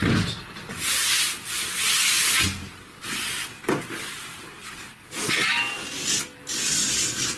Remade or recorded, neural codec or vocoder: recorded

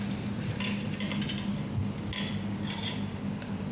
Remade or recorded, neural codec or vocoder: recorded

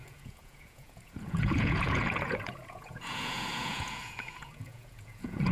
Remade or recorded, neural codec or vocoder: remade, vocoder, Vocos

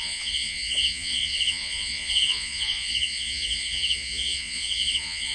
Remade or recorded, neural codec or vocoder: remade, vocoder, Vocos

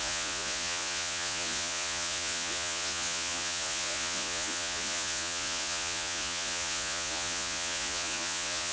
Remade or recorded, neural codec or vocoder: remade, vocoder, Vocos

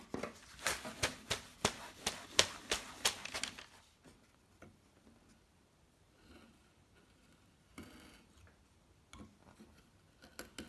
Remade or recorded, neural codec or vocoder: recorded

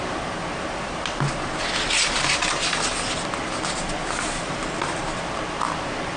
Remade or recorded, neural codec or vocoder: recorded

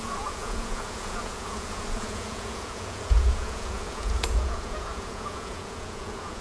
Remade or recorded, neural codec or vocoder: remade, vocoder, Vocos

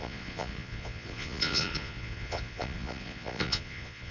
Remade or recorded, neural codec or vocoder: remade, vocoder, Vocos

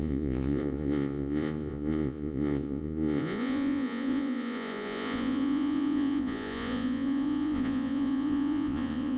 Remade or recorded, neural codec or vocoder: remade, vocoder, Vocos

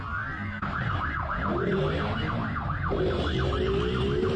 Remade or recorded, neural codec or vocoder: recorded